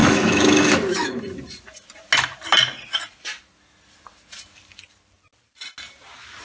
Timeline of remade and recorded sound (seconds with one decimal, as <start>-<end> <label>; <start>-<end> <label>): 0.0-1.2 remade; 1.2-6.4 recorded